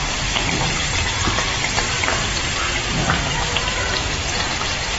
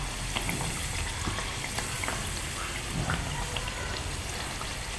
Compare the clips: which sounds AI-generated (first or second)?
first